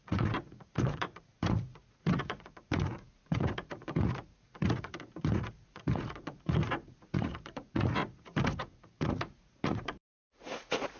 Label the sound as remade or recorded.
remade